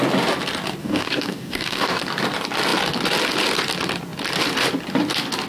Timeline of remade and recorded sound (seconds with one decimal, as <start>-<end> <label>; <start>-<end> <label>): 0.0-0.8 recorded; 0.8-2.0 remade; 2.0-5.5 recorded